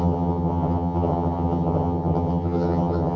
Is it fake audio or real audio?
fake